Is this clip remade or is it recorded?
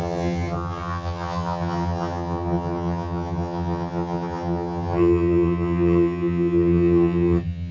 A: remade